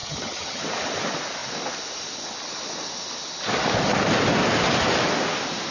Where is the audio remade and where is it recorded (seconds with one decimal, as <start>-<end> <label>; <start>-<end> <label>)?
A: 0.0-0.6 remade; 0.6-5.7 recorded